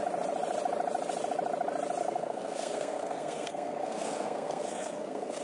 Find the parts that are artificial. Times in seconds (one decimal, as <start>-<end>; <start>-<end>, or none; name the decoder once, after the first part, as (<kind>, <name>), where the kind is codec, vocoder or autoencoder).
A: 2.0-5.4 (codec, SNAC)